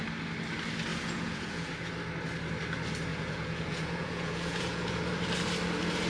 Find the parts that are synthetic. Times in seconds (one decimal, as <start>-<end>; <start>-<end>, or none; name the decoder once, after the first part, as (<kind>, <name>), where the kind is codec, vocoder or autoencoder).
0.9-1.9 (vocoder, Vocos); 3.1-5.0